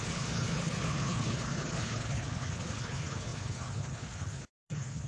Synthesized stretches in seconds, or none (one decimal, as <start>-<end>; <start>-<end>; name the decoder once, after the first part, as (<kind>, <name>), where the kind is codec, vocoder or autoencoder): 0.0-5.1 (codec, HILCodec)